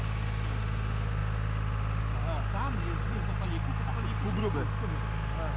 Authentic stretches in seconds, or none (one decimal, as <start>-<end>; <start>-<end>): 0.0-5.6